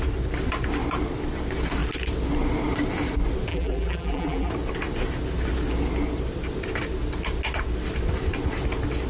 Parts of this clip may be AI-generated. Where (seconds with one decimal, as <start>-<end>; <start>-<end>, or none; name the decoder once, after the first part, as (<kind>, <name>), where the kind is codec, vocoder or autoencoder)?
3.5-4.5 (vocoder, BigVGAN v2)